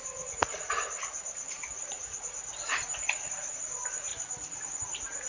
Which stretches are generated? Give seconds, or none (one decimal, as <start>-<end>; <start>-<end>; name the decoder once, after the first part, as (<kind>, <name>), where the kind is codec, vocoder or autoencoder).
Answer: 0.0-4.1 (vocoder, Vocos); 4.8-5.3